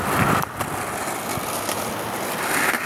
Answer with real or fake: real